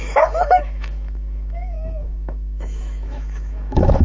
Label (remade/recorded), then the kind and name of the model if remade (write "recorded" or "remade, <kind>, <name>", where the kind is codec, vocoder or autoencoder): remade, autoencoder, DAC-VAE